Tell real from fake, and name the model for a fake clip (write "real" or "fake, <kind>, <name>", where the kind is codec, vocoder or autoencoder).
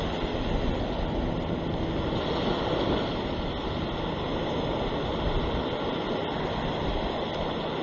real